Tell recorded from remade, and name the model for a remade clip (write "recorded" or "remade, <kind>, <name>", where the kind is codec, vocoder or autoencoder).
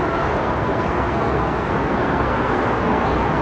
remade, codec, SNAC